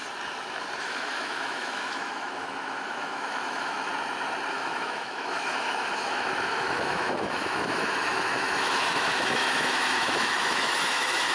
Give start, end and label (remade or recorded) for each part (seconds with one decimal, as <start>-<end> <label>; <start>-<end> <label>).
0.0-0.8 recorded; 0.8-3.9 remade; 3.9-4.5 recorded; 4.5-11.3 remade